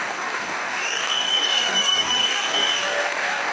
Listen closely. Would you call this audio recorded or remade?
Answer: remade